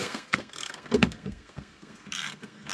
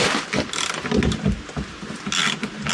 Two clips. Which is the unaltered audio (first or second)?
second